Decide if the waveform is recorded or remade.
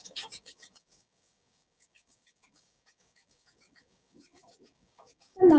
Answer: remade